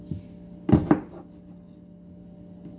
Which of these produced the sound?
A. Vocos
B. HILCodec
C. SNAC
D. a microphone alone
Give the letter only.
D